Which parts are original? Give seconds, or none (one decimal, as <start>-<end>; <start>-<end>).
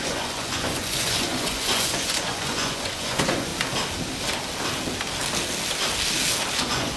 3.5-6.5